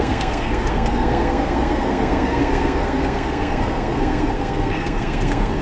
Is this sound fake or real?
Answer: fake